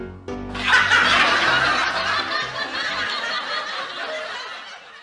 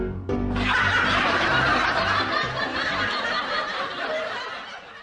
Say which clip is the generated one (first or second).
second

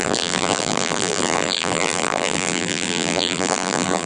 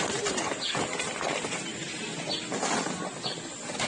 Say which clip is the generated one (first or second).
first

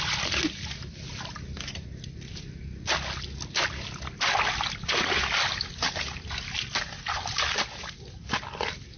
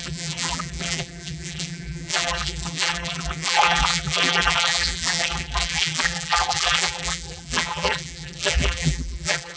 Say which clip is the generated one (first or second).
second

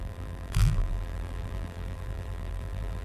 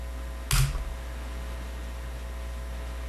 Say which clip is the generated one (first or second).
first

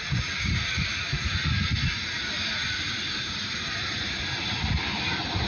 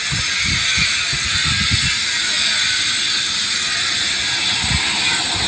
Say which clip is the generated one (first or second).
first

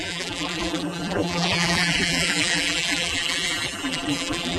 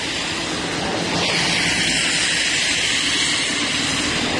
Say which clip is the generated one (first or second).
first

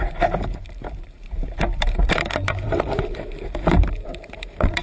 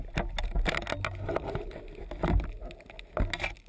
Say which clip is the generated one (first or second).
first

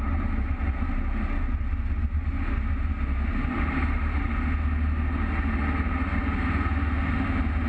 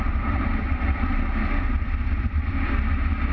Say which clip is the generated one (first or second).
second